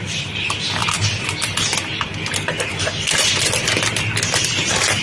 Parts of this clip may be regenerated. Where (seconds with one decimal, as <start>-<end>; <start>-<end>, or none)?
none